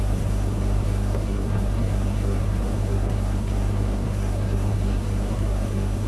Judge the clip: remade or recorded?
remade